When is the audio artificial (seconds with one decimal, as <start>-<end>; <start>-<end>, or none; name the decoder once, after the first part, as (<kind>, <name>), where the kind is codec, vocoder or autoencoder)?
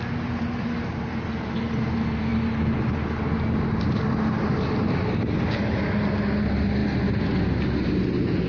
none